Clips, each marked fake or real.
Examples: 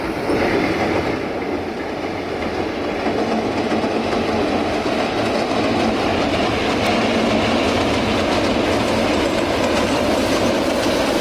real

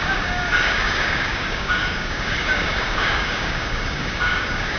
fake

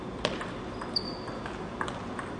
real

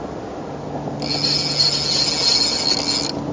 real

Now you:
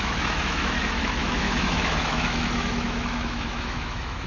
fake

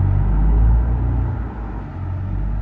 real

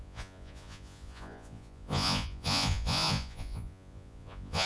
fake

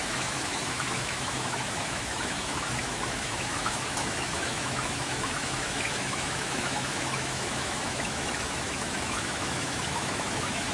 fake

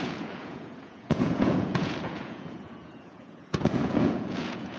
fake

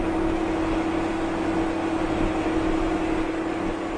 real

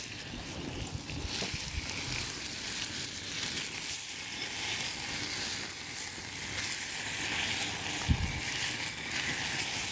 real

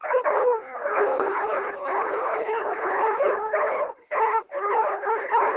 fake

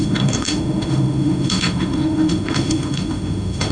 fake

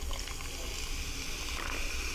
real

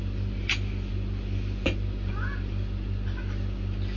real